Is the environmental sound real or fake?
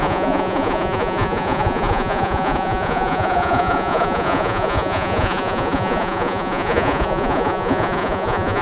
fake